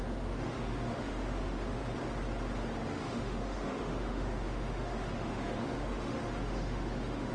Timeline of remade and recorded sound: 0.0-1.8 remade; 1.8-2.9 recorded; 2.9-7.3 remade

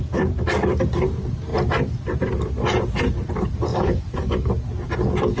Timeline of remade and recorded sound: 0.0-3.7 recorded; 3.7-4.5 remade; 4.5-5.4 recorded

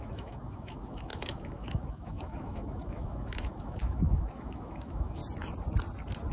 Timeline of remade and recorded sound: 0.0-5.2 remade; 5.2-6.3 recorded

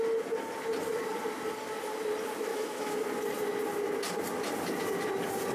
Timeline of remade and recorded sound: 0.0-2.5 recorded; 2.5-3.0 remade; 3.0-5.5 recorded

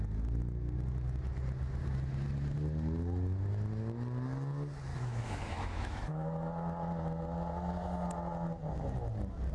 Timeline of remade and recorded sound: 0.0-4.9 recorded; 4.9-6.5 remade; 6.5-9.5 recorded

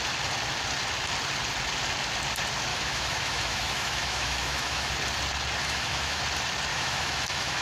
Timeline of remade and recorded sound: 0.0-2.7 recorded; 2.7-4.9 remade; 4.9-5.6 recorded; 5.6-6.2 remade; 6.2-6.7 recorded; 6.7-7.6 remade